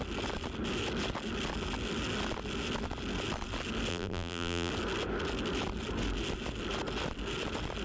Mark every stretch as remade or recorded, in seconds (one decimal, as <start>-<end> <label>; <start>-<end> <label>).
0.0-3.9 recorded; 3.9-4.7 remade; 4.7-7.8 recorded